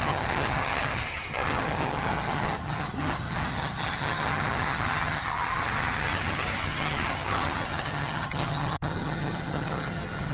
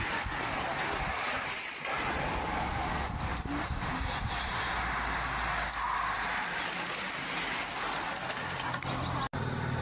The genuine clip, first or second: second